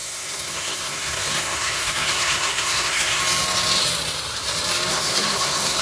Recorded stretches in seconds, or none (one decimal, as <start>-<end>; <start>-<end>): 3.2-4.9